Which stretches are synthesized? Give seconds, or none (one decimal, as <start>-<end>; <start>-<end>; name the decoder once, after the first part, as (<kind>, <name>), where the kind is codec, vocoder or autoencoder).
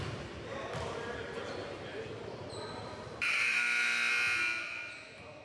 3.5-4.1 (autoencoder, DAC-VAE)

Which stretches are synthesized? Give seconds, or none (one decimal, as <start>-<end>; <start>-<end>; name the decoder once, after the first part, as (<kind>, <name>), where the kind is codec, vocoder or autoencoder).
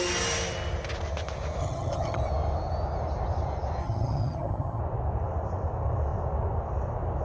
1.6-2.2 (vocoder, HiFi-GAN); 3.8-4.8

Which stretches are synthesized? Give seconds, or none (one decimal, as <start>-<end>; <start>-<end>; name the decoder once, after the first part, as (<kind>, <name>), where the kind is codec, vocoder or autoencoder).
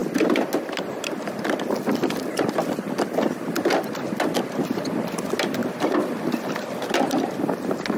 none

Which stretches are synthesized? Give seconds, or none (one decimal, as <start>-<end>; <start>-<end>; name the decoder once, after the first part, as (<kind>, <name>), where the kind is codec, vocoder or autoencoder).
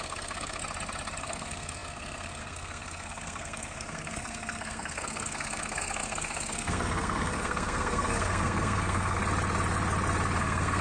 0.0-0.6 (codec, SNAC); 1.2-9.2; 10.4-10.8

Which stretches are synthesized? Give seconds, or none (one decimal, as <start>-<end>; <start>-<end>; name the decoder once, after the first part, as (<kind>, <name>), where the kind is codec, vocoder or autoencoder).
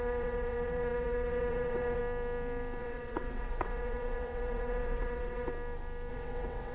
0.0-2.0 (vocoder, WaveNeXt); 2.8-5.5; 6.1-6.7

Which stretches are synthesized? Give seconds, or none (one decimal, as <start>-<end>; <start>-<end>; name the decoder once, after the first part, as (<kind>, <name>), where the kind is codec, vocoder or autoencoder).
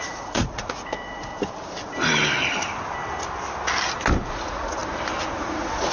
0.0-1.3 (vocoder, Vocos); 4.3-4.8; 5.3-5.9